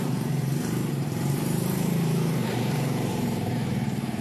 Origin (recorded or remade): remade